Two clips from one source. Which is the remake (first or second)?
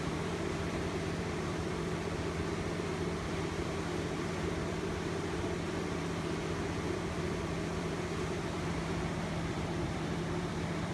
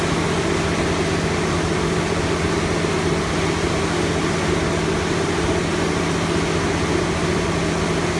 first